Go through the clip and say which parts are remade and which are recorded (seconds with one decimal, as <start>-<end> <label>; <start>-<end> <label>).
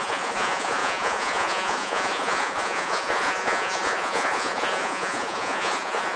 0.0-6.2 remade